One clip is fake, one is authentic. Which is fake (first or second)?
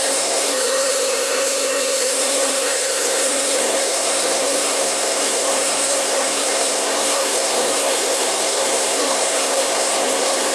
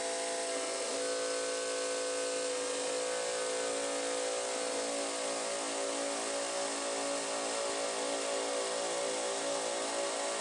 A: first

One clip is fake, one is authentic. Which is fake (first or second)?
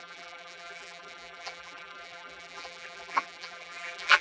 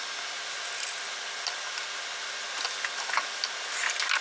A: first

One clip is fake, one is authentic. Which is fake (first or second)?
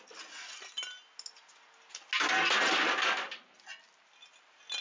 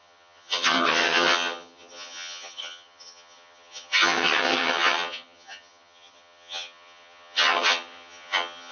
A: second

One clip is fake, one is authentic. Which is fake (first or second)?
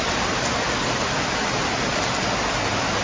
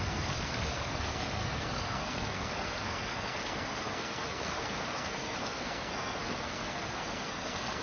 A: second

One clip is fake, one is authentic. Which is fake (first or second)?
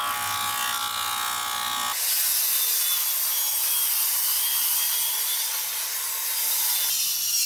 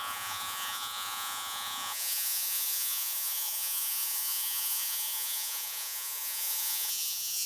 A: second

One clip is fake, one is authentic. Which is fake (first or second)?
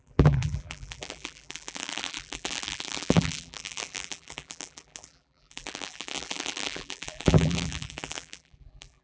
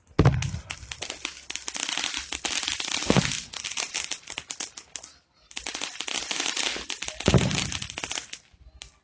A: first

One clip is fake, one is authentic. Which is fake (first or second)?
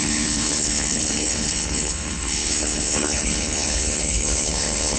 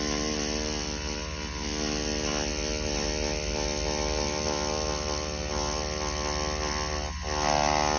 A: first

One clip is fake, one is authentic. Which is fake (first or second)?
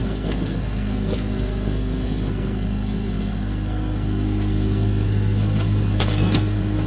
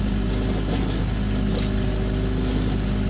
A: first